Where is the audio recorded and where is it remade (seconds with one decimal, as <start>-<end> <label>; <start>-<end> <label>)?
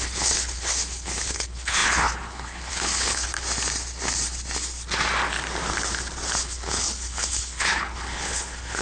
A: 0.0-3.3 remade; 3.3-6.4 recorded; 6.4-8.8 remade